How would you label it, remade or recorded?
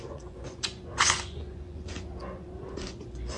remade